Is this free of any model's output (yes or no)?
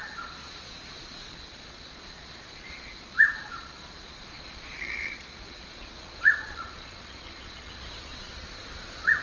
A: no